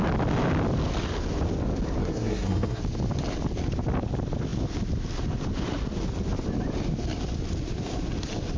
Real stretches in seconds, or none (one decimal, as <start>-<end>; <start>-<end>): 0.0-2.0; 2.8-8.6